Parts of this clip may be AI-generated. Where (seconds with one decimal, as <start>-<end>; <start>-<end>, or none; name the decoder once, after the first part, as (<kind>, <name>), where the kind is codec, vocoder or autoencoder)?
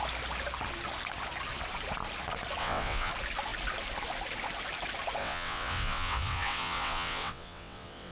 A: 2.6-3.1 (vocoder, WaveNeXt); 5.2-8.1